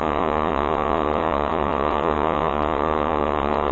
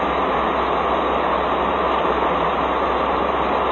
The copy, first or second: first